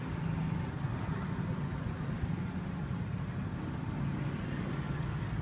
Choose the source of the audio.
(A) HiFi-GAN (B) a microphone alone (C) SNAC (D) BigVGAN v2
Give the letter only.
B